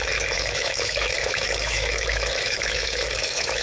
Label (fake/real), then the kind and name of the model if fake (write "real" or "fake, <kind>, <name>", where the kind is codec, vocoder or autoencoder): fake, autoencoder, DAC-VAE